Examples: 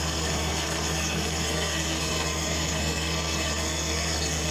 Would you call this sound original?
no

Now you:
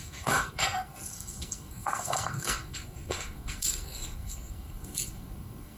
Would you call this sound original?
no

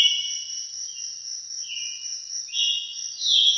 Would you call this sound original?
yes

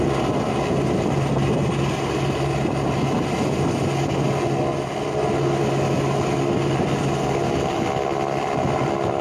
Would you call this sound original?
yes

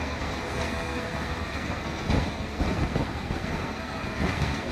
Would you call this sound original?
no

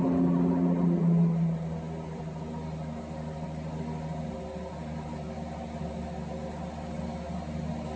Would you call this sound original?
yes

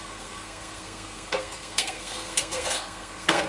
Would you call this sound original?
no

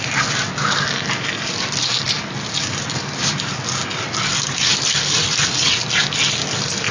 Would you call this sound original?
yes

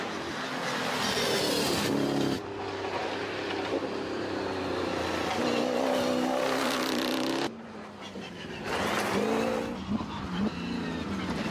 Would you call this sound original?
yes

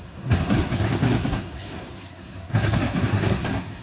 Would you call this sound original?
no